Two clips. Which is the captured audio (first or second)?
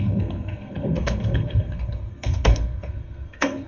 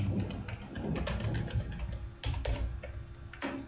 second